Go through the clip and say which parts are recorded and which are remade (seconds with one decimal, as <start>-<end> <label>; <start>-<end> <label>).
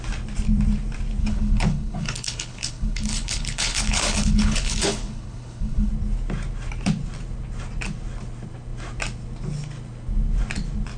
0.0-1.2 recorded; 1.2-5.9 remade; 5.9-11.0 recorded